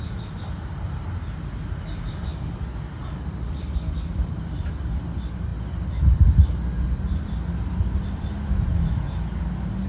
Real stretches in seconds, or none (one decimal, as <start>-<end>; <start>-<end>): 0.0-9.9